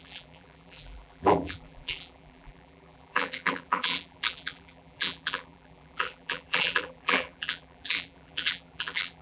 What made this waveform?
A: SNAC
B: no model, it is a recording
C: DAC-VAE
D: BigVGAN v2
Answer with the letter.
D